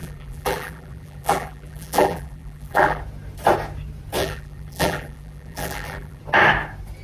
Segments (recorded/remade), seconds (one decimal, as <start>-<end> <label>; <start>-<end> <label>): 0.0-3.0 remade; 3.0-4.2 recorded; 4.2-6.2 remade; 6.2-7.0 recorded